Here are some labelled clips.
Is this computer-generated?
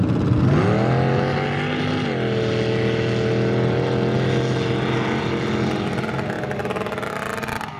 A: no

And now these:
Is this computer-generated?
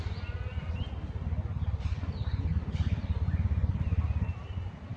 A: no